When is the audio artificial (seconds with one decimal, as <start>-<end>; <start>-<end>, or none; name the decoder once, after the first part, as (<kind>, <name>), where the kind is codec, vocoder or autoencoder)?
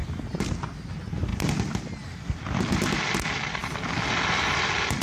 none